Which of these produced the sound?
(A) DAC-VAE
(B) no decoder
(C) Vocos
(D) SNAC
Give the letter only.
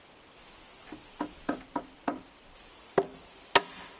B